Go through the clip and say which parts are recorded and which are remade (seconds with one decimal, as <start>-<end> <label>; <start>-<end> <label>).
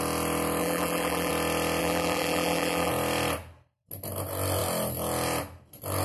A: 0.0-0.6 recorded; 0.6-1.3 remade; 1.3-1.8 recorded; 1.8-2.9 remade; 2.9-6.0 recorded